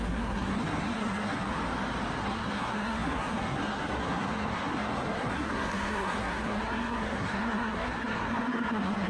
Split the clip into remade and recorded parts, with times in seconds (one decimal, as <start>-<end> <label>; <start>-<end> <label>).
0.0-1.5 remade; 1.5-2.2 recorded; 2.2-9.1 remade